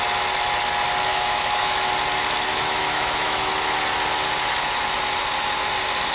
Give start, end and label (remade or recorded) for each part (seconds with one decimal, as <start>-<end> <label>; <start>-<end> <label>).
0.0-1.1 recorded; 1.1-1.9 remade; 1.9-2.5 recorded; 2.5-3.5 remade; 3.5-6.1 recorded